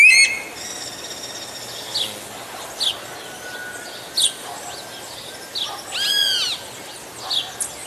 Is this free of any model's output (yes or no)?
yes